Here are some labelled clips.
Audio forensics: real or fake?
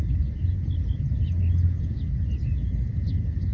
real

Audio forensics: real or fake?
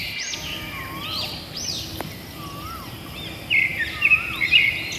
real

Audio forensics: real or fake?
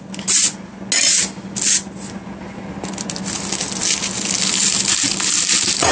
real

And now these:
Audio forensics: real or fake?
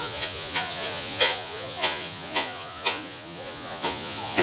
fake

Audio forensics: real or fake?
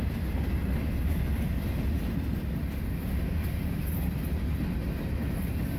real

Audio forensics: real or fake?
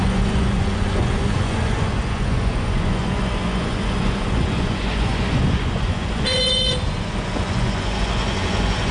fake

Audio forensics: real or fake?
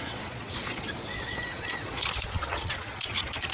fake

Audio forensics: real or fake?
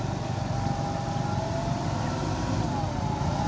real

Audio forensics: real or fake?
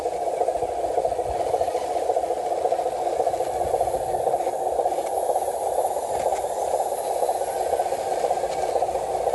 real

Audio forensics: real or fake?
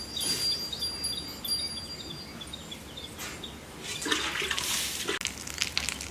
real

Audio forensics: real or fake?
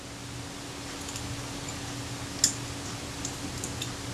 real